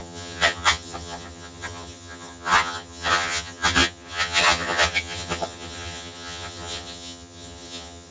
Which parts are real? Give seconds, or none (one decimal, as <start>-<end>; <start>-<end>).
none